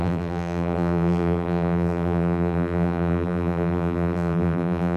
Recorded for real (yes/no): no